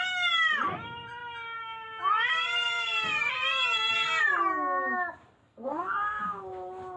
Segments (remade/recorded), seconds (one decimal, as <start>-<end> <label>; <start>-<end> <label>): 0.0-5.4 recorded; 5.4-6.2 remade; 6.2-7.0 recorded